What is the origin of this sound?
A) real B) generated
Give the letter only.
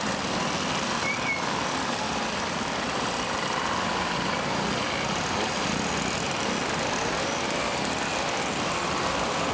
A